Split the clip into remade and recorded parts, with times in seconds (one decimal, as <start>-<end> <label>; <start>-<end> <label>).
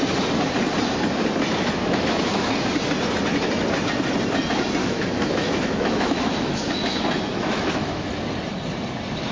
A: 0.0-1.8 recorded; 1.8-2.5 remade; 2.5-4.8 recorded; 4.8-8.1 remade; 8.1-9.3 recorded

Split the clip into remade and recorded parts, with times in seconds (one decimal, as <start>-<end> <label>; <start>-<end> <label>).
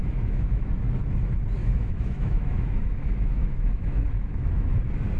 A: 0.0-0.7 remade; 0.7-1.6 recorded; 1.6-4.7 remade; 4.7-5.2 recorded